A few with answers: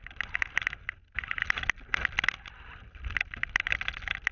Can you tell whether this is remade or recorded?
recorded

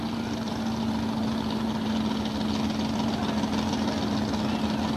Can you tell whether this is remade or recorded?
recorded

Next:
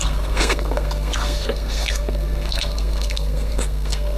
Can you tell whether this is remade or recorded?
remade